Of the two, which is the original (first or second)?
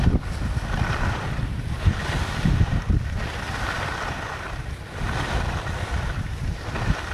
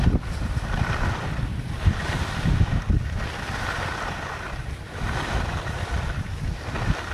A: first